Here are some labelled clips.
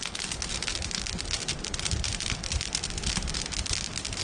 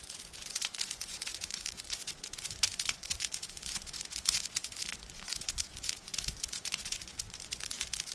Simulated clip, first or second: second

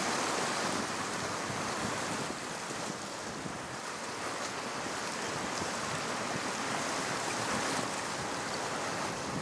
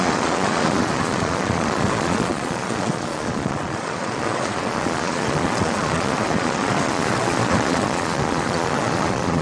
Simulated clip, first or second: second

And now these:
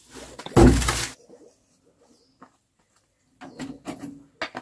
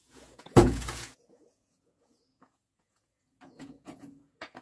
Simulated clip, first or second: second